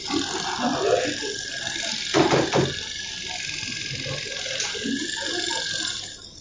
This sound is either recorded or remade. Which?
recorded